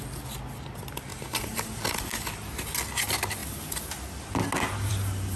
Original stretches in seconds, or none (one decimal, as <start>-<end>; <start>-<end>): 0.0-1.1; 1.8-5.4